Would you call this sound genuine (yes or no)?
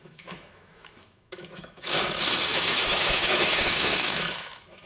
no